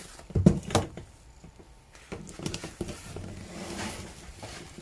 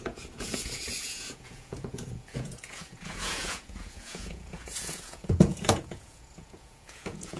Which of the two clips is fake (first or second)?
second